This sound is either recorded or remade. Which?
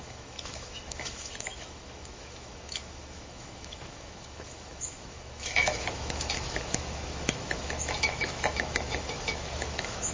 remade